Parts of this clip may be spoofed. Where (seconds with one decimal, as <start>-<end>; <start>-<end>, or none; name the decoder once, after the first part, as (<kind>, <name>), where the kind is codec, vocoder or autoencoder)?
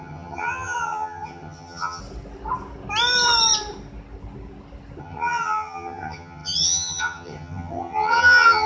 0.0-2.0 (vocoder, HiFi-GAN); 5.0-8.7